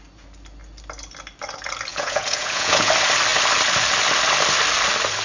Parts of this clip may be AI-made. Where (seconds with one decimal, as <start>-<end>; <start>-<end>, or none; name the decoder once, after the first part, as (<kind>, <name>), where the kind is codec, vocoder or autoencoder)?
1.9-2.9 (vocoder, Vocos)